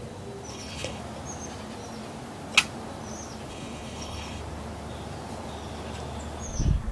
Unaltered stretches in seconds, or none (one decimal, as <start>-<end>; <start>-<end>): 0.0-0.5; 1.0-3.5; 4.4-6.9